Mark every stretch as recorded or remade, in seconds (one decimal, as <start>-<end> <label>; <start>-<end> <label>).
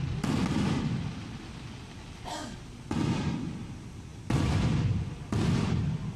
0.0-6.2 recorded